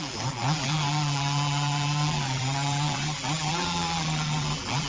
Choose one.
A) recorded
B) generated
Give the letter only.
B